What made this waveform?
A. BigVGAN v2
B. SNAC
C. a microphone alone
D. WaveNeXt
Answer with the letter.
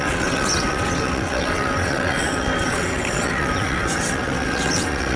D